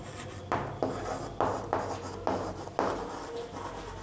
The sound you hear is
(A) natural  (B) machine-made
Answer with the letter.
A